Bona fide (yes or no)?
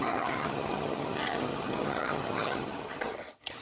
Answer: no